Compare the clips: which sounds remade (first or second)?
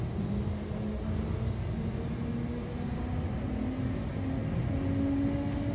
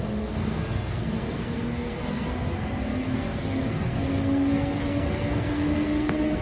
second